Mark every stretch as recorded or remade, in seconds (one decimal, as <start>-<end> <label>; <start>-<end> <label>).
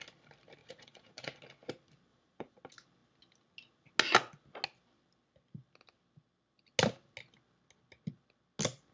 0.0-0.6 recorded; 0.6-1.4 remade; 1.4-2.1 recorded; 2.1-2.6 remade; 2.6-8.9 recorded